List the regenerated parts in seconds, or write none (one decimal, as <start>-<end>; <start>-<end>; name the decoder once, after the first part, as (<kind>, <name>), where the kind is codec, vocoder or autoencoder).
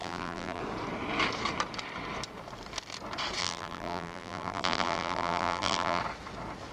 0.0-0.6 (vocoder, BigVGAN v2); 3.4-6.0